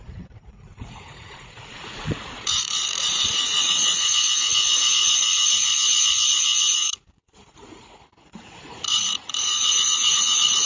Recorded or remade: remade